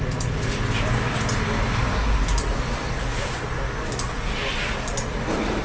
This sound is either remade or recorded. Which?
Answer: recorded